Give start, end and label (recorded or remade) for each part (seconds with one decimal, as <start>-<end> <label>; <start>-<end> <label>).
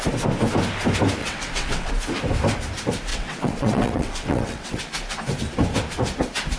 0.0-1.2 recorded; 1.2-1.9 remade; 1.9-3.1 recorded; 3.1-4.8 remade; 4.8-6.6 recorded